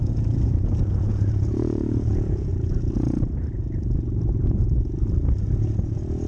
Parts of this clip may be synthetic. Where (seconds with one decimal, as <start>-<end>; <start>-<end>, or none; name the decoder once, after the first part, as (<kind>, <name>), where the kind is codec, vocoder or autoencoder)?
0.0-2.5 (vocoder, Vocos)